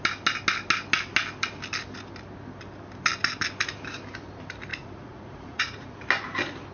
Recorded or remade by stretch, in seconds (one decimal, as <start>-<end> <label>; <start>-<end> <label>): 0.0-4.7 recorded; 4.7-5.9 remade; 5.9-6.7 recorded